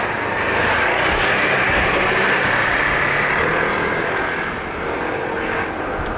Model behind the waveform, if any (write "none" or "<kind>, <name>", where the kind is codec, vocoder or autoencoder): none